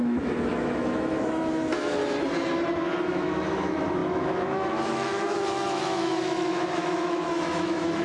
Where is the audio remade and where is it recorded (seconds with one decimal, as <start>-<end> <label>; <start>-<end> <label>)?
0.0-2.0 remade; 2.0-3.1 recorded; 3.1-8.0 remade